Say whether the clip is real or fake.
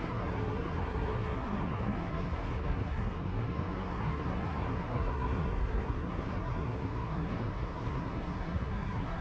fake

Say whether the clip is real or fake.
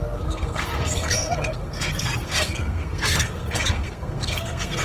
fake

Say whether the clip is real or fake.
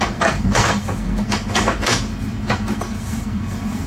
fake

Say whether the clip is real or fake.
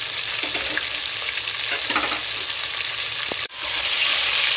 real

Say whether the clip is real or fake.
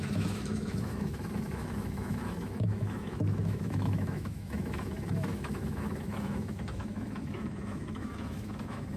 fake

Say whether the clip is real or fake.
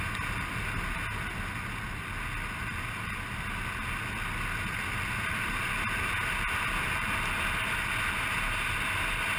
real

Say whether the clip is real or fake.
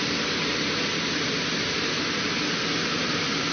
real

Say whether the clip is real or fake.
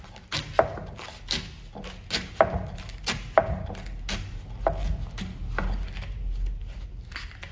real